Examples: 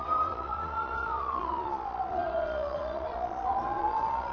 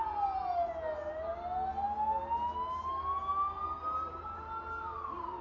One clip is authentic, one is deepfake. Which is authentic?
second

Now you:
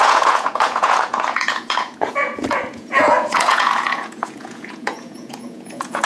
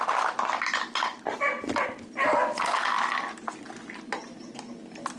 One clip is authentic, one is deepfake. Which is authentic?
second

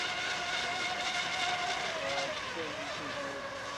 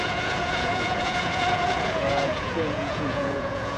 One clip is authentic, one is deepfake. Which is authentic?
first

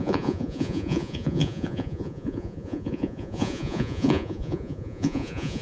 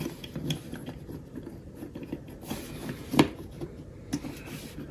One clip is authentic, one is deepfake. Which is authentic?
second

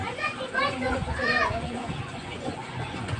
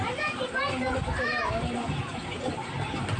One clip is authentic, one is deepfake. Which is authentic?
second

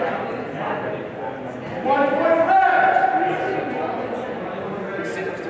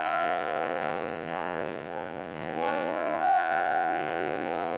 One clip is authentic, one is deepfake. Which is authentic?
first